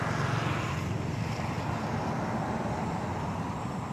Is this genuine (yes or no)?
yes